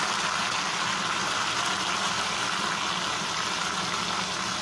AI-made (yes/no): no